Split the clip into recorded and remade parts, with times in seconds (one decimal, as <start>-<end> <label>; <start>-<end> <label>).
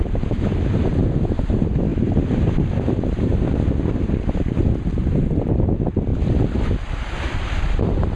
0.0-3.3 remade; 3.3-4.4 recorded; 4.4-6.1 remade; 6.1-7.6 recorded; 7.6-8.2 remade